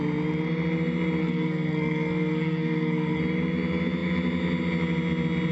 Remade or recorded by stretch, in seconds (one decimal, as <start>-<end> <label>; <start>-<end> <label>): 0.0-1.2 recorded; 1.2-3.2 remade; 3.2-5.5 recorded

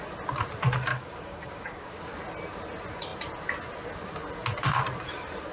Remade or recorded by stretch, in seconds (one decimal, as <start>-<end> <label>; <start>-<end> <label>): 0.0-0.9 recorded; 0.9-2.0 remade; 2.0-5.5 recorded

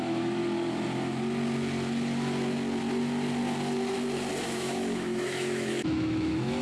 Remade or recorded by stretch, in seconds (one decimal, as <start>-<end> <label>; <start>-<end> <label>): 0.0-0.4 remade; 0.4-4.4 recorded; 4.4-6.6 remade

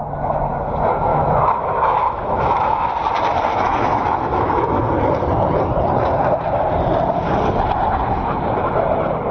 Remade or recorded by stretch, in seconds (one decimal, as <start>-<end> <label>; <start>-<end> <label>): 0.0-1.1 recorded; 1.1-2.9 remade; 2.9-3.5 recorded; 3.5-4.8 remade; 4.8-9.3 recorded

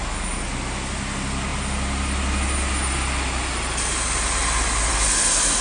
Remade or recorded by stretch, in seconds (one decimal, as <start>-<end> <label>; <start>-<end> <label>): 0.0-5.6 recorded

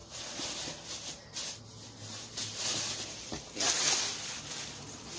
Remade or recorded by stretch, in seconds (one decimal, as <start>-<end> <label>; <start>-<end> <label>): 0.0-5.2 recorded

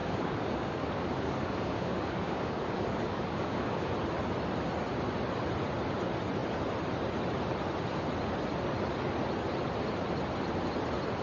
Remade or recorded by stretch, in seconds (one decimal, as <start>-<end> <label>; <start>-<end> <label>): 0.0-3.9 remade; 3.9-11.2 recorded

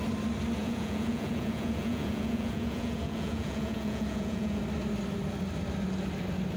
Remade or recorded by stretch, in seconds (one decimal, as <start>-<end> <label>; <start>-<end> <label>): 0.0-0.6 recorded; 0.6-4.6 remade; 4.6-6.6 recorded